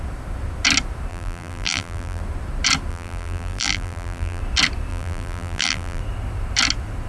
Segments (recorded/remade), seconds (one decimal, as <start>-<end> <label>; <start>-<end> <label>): 0.0-1.1 recorded; 1.1-2.2 remade; 2.2-2.9 recorded; 2.9-4.4 remade; 4.4-4.9 recorded; 4.9-6.0 remade; 6.0-7.1 recorded